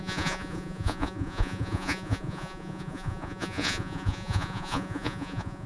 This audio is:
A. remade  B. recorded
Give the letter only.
A